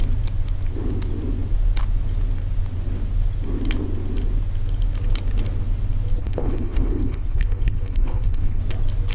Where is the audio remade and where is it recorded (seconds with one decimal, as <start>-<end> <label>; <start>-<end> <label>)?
0.0-6.2 recorded; 6.2-8.6 remade; 8.6-9.1 recorded